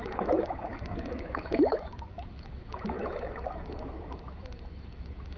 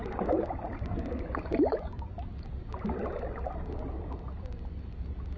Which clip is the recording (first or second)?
second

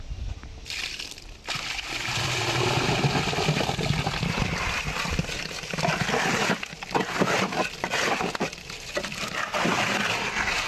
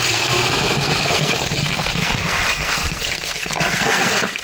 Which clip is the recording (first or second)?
first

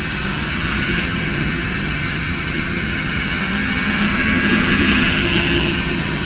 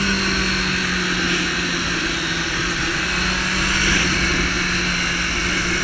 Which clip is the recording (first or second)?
second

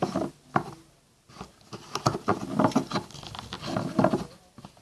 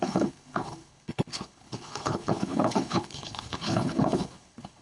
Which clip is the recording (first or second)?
first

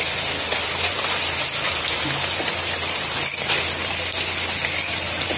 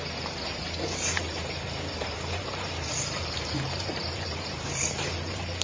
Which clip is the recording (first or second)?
first